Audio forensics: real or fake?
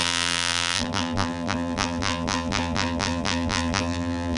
fake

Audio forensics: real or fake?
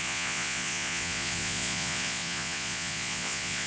fake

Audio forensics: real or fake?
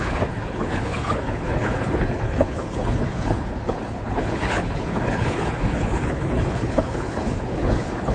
fake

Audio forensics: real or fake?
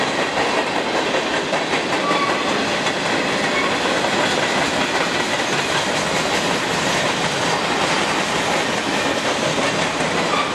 real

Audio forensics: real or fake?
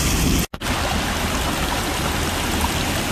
real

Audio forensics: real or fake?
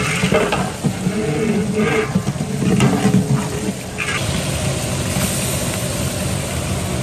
real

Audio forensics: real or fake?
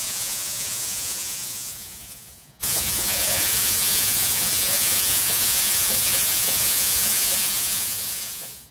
fake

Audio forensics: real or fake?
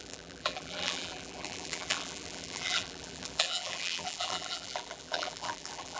fake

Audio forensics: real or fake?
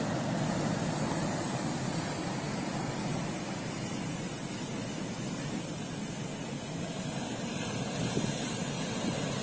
real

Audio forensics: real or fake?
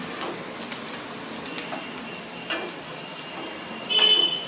real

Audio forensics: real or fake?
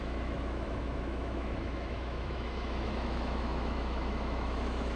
fake